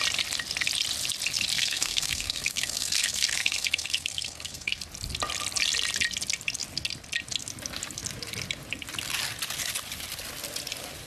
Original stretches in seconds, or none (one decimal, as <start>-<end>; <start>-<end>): 0.0-1.5; 4.8-11.1

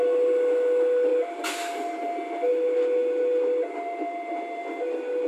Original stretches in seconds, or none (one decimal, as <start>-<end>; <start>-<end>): 0.0-5.3

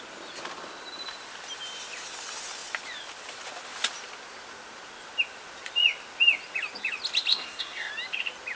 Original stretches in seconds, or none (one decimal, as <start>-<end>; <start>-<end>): 0.0-7.3; 7.9-8.6

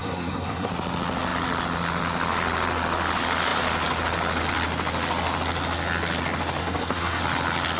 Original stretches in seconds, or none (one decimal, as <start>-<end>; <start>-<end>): 0.7-6.6; 7.2-7.8

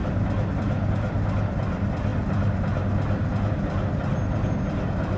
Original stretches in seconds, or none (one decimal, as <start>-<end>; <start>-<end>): 0.0-5.2

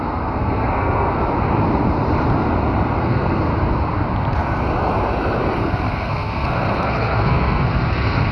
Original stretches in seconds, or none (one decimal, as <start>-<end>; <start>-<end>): 1.2-3.0; 3.5-5.6

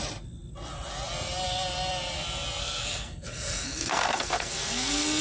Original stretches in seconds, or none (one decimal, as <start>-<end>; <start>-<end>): 0.0-2.6